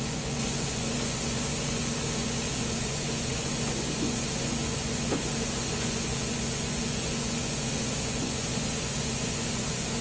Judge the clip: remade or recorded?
remade